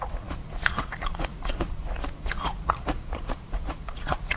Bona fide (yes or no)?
no